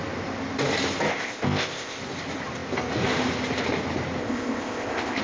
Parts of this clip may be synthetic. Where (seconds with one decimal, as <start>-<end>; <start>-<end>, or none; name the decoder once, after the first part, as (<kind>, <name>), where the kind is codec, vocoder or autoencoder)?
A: 1.1-2.0 (codec, ZipCodec); 4.2-5.2